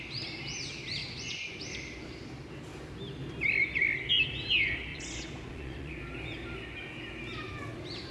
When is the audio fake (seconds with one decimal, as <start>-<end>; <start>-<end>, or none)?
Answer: 1.0-1.6; 4.9-5.9